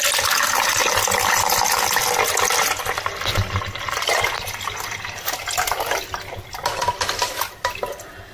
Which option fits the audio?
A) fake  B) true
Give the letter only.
B